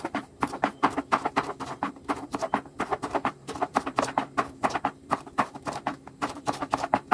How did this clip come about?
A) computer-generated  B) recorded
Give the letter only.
A